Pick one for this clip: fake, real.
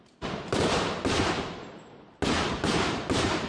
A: real